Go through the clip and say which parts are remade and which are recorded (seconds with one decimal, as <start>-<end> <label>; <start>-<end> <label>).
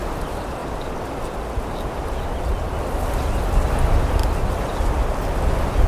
0.0-5.9 recorded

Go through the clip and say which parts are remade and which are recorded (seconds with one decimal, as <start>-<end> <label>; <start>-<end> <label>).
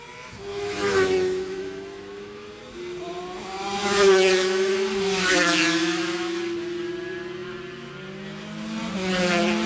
0.0-0.5 recorded; 0.5-2.6 remade; 2.6-3.8 recorded; 3.8-6.4 remade; 6.4-9.7 recorded